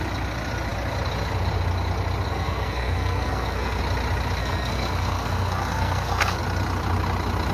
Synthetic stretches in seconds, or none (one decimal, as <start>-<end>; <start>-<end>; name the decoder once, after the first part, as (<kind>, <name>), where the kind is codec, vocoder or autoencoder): 2.3-3.8 (codec, SNAC); 4.4-6.4

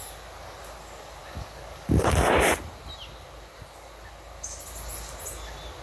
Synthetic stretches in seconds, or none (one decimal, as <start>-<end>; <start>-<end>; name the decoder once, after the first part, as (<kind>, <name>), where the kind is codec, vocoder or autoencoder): none

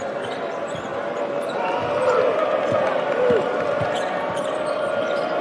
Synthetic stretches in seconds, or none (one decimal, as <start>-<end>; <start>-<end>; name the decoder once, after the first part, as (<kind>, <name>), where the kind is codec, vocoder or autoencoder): 0.0-5.4 (vocoder, BigVGAN v2)

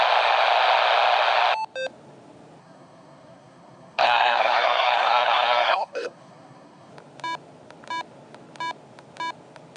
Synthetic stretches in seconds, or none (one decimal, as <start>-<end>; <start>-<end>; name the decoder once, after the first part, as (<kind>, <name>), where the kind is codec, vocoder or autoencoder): 2.6-6.9 (codec, SNAC)

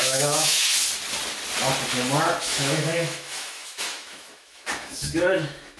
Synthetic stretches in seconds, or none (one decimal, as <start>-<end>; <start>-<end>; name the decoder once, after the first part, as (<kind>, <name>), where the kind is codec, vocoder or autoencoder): 0.0-0.7 (autoencoder, DAC-VAE); 2.4-5.8

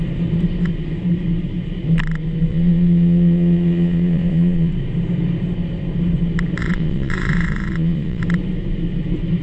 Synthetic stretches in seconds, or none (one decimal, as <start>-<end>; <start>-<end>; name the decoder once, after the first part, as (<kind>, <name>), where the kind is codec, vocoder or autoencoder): 2.5-4.7 (vocoder, Vocos); 6.6-8.2